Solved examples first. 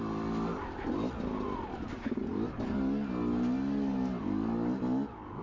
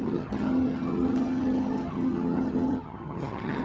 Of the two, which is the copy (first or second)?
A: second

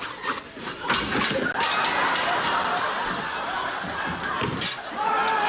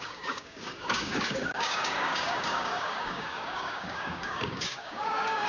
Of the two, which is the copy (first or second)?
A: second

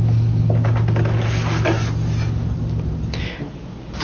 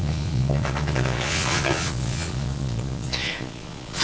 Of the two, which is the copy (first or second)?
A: second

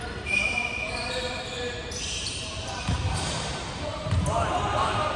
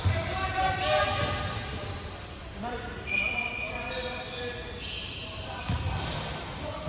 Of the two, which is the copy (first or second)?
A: first